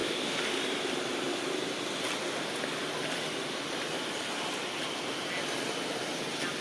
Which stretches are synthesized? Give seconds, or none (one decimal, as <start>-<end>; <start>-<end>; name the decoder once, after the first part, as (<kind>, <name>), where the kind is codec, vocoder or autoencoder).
0.0-0.6 (autoencoder, DAC-VAE)